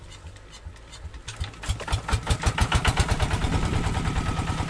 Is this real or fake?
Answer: real